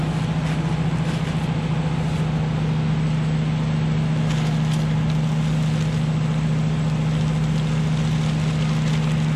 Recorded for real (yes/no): yes